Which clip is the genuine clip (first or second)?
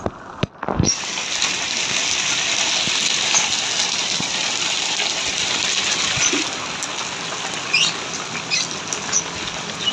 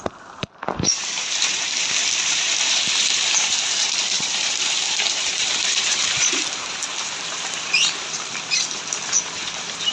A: first